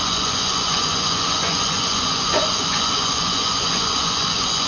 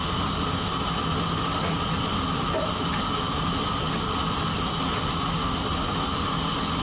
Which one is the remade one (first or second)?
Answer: first